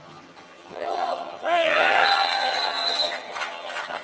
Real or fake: fake